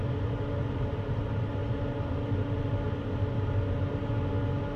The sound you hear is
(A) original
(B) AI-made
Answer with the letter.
A